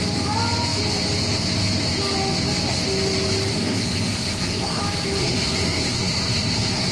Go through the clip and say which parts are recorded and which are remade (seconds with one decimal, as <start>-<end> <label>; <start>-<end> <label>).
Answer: 0.0-3.5 recorded; 3.5-4.8 remade; 4.8-5.2 recorded; 5.2-6.9 remade